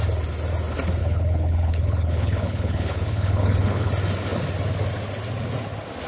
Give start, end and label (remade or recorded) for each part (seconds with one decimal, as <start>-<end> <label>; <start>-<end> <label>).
0.0-1.0 recorded; 1.0-3.9 remade; 3.9-6.1 recorded